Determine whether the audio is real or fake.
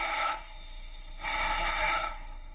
fake